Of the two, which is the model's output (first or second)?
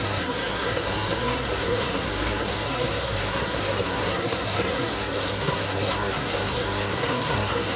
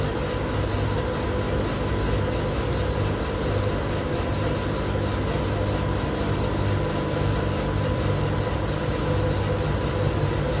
first